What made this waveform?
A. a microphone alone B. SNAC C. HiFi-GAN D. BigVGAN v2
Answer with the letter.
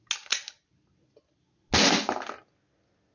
A